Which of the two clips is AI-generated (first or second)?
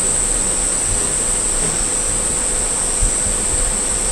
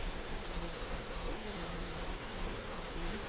second